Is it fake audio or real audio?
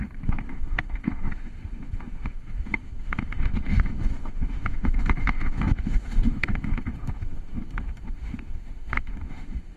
fake